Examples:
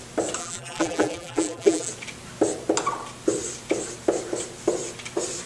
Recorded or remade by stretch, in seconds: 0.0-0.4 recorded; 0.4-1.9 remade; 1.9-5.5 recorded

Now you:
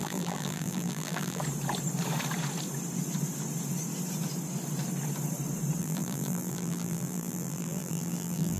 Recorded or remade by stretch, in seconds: 0.0-1.4 remade; 1.4-5.8 recorded; 5.8-8.6 remade

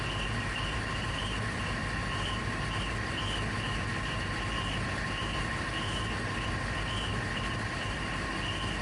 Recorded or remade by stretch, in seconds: 0.0-8.8 recorded

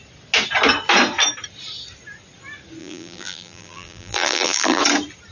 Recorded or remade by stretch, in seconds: 0.0-2.8 recorded; 2.8-4.8 remade; 4.8-5.3 recorded

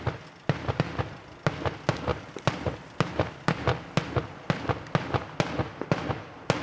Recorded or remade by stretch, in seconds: 0.0-6.6 recorded

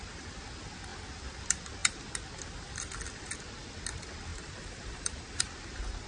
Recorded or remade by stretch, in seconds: 0.0-4.3 recorded; 4.3-5.4 remade; 5.4-6.1 recorded